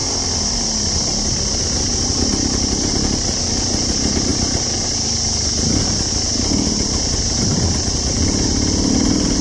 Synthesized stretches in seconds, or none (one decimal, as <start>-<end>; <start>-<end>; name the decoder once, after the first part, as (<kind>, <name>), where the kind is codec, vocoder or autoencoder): none